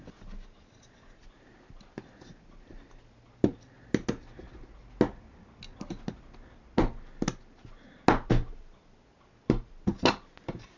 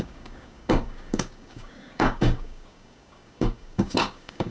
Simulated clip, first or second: second